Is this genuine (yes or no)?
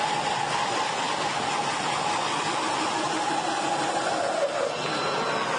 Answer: no